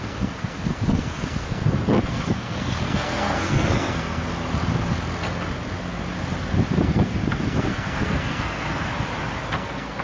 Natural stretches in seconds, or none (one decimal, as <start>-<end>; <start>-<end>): 4.3-6.8; 8.9-9.5